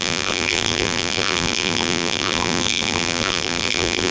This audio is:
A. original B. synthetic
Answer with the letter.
B